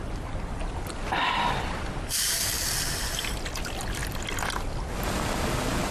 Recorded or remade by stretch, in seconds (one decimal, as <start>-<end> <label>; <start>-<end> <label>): 0.0-0.6 recorded; 0.6-2.3 remade; 2.3-5.9 recorded